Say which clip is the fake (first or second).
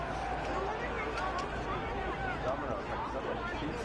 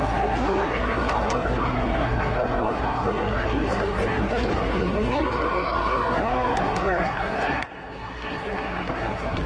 second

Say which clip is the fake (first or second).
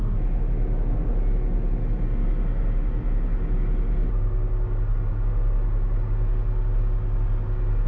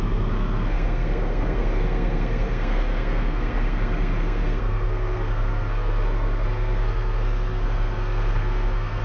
second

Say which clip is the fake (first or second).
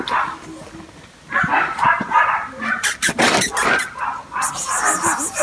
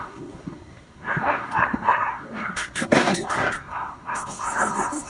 second